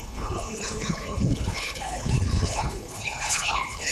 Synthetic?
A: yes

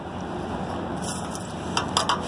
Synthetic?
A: no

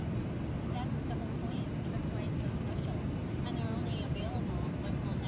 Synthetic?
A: no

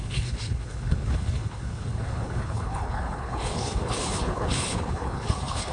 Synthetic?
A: yes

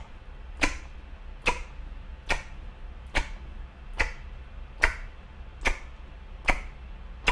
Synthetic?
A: no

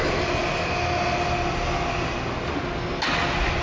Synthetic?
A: no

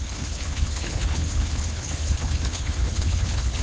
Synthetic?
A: yes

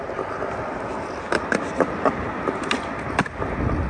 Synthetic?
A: no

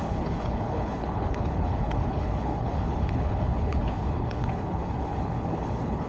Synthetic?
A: yes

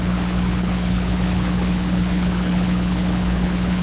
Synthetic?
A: yes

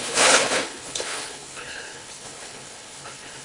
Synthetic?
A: yes